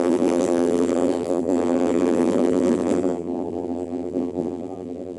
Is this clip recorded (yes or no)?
no